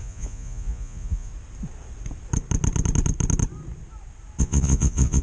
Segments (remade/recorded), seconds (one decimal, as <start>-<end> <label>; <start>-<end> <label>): 0.0-1.3 remade; 1.3-4.4 recorded; 4.4-5.2 remade